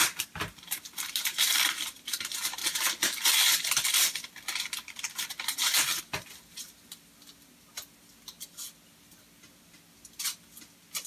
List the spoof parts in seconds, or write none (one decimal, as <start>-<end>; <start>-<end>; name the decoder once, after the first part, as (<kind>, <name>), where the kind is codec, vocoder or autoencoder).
none